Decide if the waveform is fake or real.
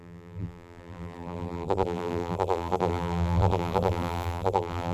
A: fake